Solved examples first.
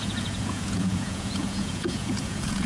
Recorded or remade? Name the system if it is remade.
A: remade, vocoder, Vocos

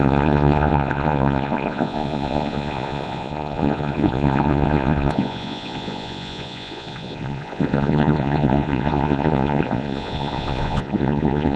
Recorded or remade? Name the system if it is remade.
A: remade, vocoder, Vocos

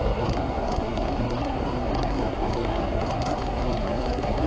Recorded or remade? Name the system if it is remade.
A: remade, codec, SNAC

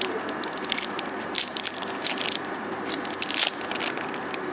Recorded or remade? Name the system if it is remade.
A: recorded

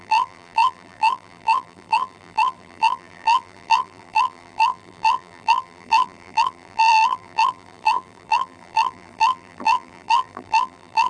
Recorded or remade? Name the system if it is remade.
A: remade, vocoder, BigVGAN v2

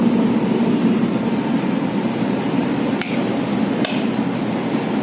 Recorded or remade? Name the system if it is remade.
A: remade, vocoder, BigVGAN v2